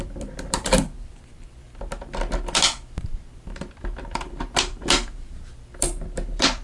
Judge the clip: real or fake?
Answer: fake